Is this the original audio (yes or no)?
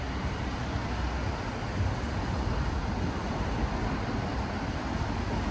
yes